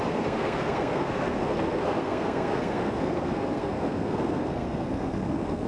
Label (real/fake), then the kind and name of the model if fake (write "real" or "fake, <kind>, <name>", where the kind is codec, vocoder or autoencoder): fake, codec, SNAC